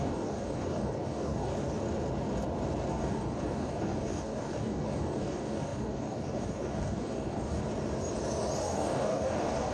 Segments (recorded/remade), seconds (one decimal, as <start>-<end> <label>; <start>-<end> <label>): 0.0-1.5 remade; 1.5-2.9 recorded; 2.9-7.6 remade; 7.6-8.6 recorded; 8.6-9.7 remade